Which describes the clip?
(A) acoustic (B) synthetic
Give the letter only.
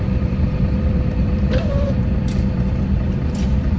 B